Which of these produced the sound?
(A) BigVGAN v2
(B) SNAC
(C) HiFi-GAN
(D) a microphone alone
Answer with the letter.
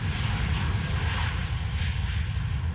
D